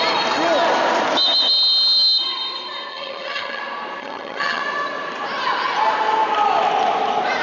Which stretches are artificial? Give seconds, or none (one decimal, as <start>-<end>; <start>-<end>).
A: 2.9-3.6; 4.0-4.6